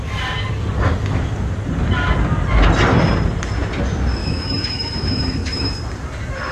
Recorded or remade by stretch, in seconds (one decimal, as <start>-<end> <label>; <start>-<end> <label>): 0.0-4.2 recorded; 4.2-5.7 remade; 5.7-6.5 recorded